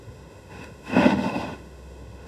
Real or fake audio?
fake